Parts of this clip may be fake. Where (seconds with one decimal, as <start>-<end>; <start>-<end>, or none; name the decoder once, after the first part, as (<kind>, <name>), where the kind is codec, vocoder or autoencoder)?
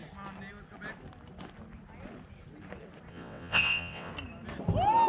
3.1-4.1 (vocoder, WaveNeXt)